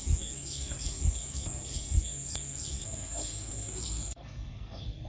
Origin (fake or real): fake